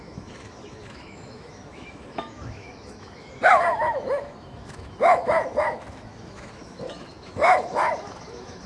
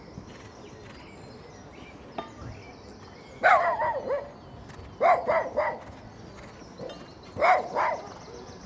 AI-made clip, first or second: first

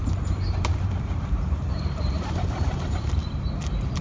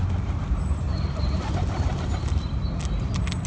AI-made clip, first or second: first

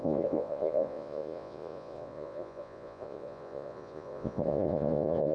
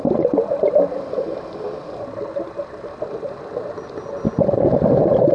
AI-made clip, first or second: first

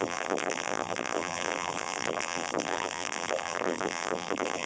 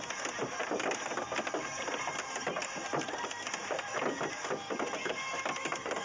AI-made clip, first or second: first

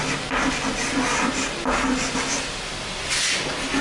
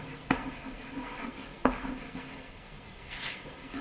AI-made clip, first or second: second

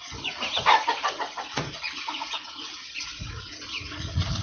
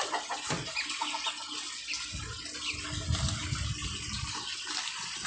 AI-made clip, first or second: first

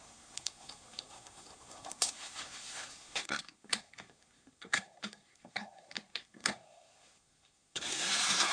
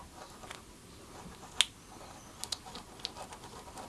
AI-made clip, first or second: first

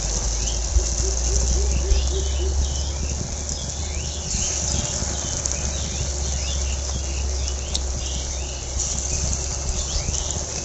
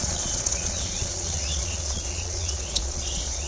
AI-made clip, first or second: second